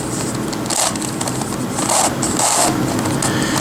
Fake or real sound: real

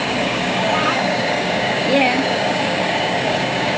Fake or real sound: fake